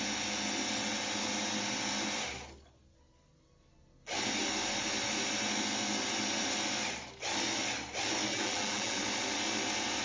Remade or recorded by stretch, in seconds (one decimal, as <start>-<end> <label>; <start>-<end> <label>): 0.0-8.3 recorded; 8.3-9.0 remade; 9.0-10.0 recorded